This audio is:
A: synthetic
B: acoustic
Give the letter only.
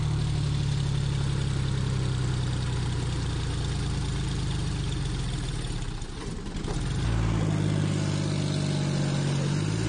B